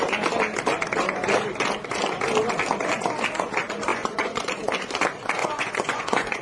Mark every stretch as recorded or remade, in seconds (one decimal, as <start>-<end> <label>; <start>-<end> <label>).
0.0-3.9 recorded; 3.9-4.6 remade; 4.6-5.4 recorded; 5.4-6.4 remade